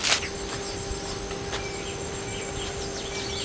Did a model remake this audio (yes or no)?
no